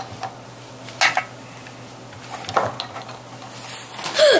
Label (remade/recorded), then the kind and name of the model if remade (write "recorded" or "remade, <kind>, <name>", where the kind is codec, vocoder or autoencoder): recorded